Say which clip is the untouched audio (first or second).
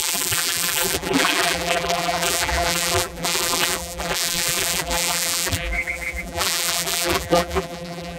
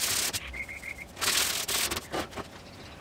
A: second